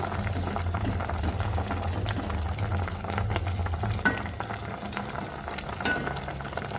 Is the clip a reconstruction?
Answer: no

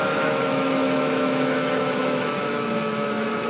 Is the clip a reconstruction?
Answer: yes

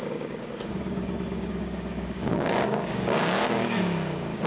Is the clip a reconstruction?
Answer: yes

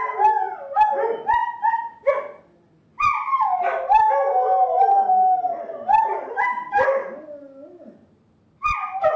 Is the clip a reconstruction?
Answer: no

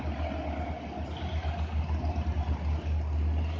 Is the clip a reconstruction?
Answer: no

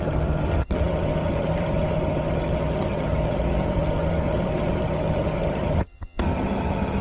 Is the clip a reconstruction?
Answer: yes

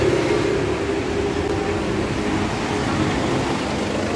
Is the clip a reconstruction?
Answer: no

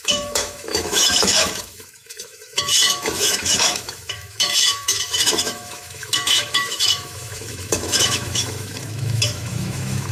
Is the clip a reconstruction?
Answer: yes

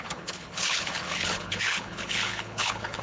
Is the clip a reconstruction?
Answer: yes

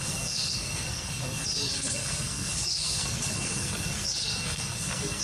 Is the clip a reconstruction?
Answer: yes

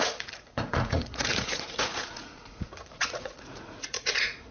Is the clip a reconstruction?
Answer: yes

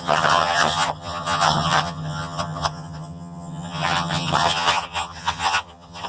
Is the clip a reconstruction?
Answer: yes